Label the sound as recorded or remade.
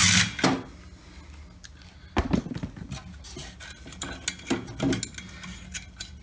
recorded